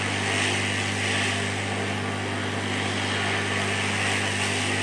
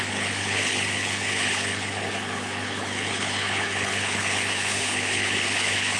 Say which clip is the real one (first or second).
first